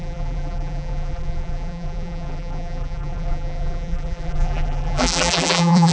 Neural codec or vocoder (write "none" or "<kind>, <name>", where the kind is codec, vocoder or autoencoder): vocoder, BigVGAN v2